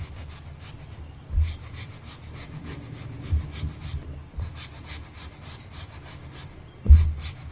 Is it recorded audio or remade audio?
recorded